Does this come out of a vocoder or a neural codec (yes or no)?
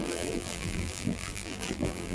yes